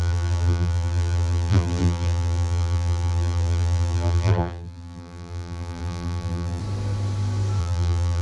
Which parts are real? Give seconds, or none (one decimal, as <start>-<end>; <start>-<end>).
6.6-7.6